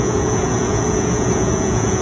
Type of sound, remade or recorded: remade